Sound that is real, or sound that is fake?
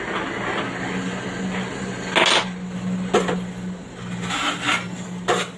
real